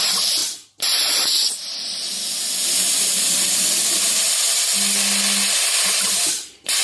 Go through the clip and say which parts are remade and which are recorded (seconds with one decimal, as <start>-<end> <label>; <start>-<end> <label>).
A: 0.0-6.8 recorded